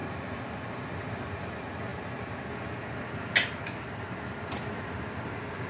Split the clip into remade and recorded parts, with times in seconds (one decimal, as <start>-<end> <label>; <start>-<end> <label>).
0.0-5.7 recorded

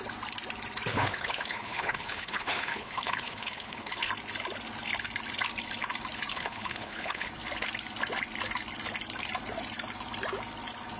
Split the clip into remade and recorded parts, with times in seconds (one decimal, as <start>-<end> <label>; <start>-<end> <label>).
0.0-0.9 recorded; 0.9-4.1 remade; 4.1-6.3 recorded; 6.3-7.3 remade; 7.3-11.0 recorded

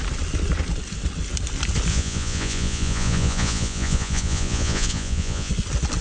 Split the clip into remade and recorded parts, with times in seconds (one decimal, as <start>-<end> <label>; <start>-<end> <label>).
0.0-1.9 recorded; 1.9-5.5 remade; 5.5-6.0 recorded

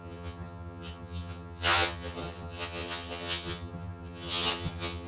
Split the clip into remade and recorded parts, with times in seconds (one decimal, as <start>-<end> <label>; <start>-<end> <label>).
0.0-5.1 remade

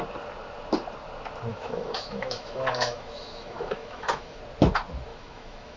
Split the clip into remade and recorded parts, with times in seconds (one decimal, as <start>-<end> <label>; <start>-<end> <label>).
0.0-1.5 recorded; 1.5-4.4 remade; 4.4-5.1 recorded; 5.1-5.8 remade

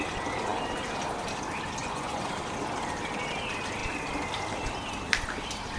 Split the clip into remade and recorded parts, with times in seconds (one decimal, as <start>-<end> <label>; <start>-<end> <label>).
0.0-1.8 recorded; 1.8-2.3 remade; 2.3-5.8 recorded